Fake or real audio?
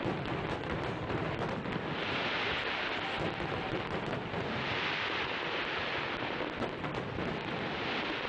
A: real